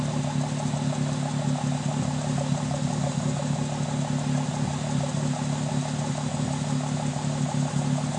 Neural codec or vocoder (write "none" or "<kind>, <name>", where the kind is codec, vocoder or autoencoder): none